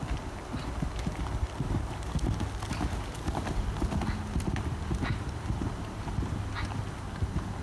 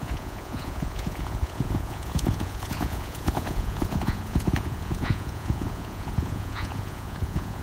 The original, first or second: first